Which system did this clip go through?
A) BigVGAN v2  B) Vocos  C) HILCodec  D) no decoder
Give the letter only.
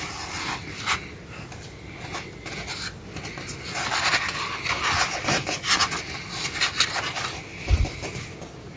D